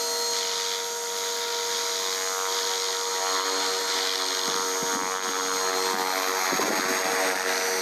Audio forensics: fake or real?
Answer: real